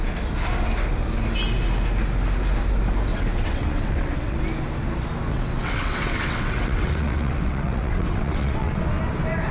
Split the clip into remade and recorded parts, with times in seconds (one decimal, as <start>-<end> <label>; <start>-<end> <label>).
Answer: 0.0-3.1 recorded; 3.1-4.4 remade; 4.4-5.3 recorded; 5.3-8.8 remade; 8.8-9.5 recorded